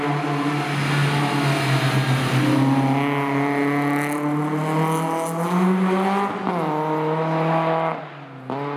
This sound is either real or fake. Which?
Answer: real